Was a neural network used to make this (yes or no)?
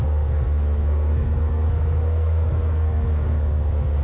yes